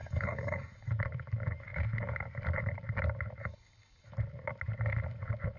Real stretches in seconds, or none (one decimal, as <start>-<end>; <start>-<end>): 0.9-3.4; 4.1-5.6